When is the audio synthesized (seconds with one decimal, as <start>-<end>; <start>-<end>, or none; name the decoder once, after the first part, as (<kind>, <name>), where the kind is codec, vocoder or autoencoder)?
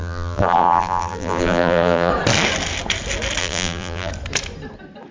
0.0-2.1 (vocoder, BigVGAN v2); 3.4-4.1